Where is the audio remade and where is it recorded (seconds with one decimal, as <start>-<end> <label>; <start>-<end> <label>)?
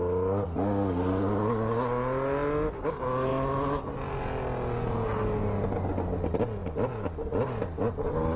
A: 0.0-8.4 recorded